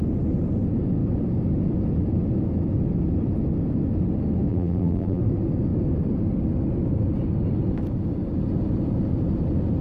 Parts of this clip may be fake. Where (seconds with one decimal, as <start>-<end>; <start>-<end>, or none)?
4.5-5.2